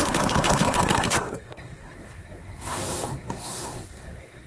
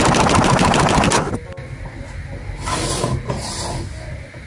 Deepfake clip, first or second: first